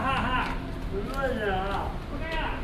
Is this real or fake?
real